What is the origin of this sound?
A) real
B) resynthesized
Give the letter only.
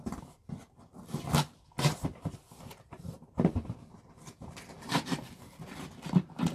B